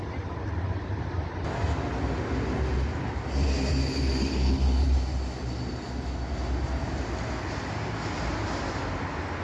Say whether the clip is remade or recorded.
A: recorded